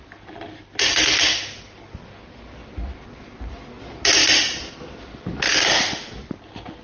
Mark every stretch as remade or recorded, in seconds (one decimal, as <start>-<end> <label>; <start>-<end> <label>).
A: 0.0-6.8 recorded